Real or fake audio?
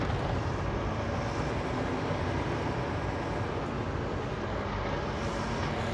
real